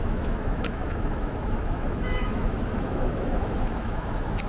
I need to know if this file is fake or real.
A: fake